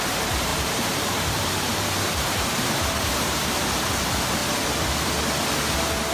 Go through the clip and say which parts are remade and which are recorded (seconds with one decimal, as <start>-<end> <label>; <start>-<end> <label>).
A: 0.0-0.5 recorded; 0.5-3.7 remade; 3.7-6.1 recorded